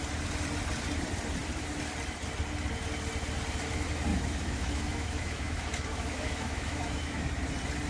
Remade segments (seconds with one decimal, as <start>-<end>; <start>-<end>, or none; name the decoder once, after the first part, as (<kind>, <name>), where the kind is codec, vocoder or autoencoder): 4.1-7.3 (autoencoder, DAC-VAE)